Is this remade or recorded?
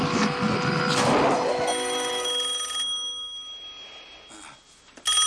recorded